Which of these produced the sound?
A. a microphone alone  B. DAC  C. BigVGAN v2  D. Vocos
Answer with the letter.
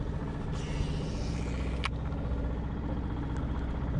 A